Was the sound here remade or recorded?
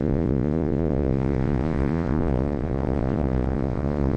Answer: remade